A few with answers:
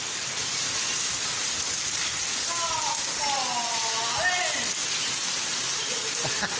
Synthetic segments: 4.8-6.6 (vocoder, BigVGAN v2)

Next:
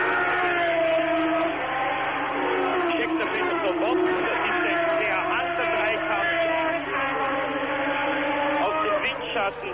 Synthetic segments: 2.7-3.5 (vocoder, BigVGAN v2)

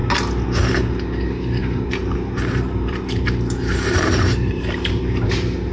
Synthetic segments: 1.6-5.0 (vocoder, BigVGAN v2)

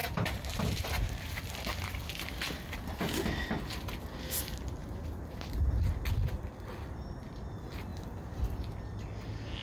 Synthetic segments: 0.0-1.2 (vocoder, BigVGAN v2); 4.8-5.7

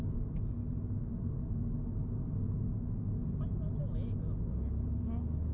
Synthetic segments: none